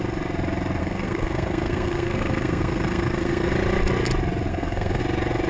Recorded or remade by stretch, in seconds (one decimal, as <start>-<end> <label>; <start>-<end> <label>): 0.0-0.8 recorded; 0.8-3.5 remade; 3.5-4.5 recorded; 4.5-5.0 remade; 5.0-5.5 recorded